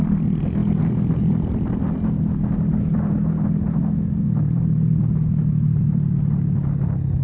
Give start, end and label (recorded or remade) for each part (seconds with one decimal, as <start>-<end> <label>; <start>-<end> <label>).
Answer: 0.0-7.2 recorded